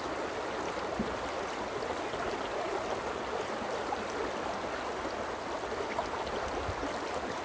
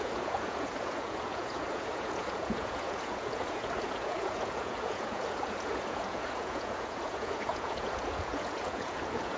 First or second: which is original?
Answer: first